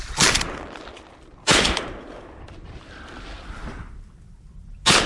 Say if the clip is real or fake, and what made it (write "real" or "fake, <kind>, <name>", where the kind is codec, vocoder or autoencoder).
real